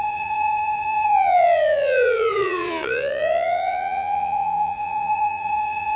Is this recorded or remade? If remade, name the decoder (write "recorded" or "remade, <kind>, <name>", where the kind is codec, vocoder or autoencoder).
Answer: remade, vocoder, Vocos